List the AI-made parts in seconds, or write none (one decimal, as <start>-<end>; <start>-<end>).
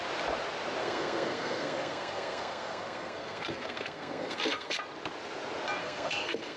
0.8-4.8; 5.8-6.6